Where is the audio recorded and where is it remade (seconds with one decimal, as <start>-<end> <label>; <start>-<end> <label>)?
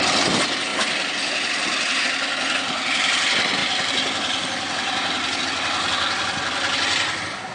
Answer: 0.0-0.7 recorded; 0.7-2.0 remade; 2.0-3.6 recorded; 3.6-5.4 remade; 5.4-7.5 recorded